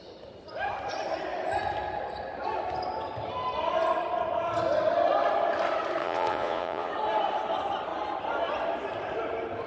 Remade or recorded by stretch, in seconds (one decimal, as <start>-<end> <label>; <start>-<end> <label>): 0.0-6.0 recorded; 6.0-6.9 remade; 6.9-9.7 recorded